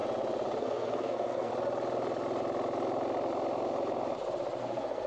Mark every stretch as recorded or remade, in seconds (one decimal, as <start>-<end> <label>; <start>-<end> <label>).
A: 0.0-0.6 recorded; 0.6-1.5 remade; 1.5-4.6 recorded; 4.6-5.1 remade